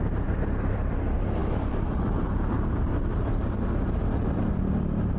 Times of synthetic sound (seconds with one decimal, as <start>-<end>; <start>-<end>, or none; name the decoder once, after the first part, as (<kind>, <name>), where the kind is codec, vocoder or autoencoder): none